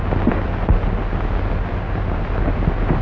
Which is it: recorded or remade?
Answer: recorded